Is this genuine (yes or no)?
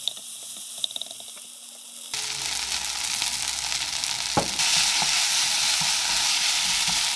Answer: yes